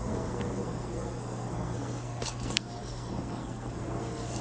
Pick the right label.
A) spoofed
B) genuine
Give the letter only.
A